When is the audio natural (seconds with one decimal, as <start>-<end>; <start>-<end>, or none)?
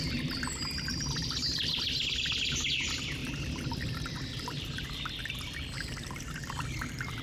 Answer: 0.0-3.2